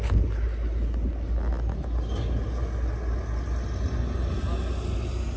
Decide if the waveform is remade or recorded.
recorded